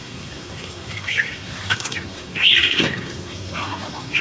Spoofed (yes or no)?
yes